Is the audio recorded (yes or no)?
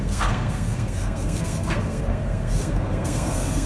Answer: no